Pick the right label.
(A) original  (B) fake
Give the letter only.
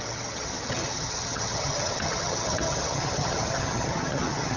B